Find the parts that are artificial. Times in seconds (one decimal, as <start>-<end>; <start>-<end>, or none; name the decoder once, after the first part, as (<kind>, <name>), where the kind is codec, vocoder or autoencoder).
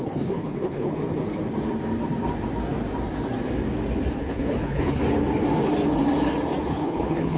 0.0-1.0 (codec, HILCodec); 4.1-5.0; 6.6-7.4